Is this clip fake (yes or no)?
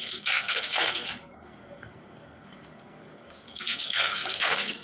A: yes